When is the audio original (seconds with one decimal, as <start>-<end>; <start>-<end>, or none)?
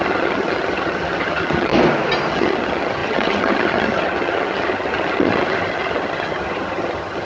1.7-2.3